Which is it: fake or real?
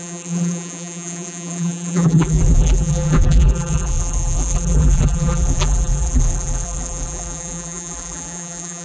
fake